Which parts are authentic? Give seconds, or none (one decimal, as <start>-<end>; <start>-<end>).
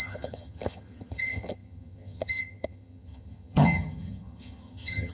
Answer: none